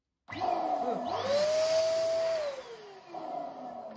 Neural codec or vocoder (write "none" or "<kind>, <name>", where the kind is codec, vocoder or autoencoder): none